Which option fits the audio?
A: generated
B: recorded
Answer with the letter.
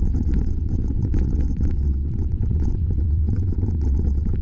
A